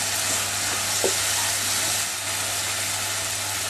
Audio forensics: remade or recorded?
recorded